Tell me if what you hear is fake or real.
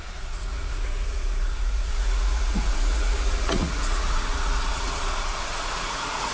fake